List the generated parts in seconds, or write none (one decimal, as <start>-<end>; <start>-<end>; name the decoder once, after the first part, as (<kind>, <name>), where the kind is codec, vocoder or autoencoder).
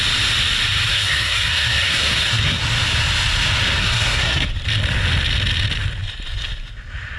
0.9-2.6 (codec, SNAC); 3.8-4.5